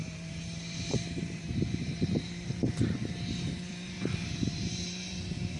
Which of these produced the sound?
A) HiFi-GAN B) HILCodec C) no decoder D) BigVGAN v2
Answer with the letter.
D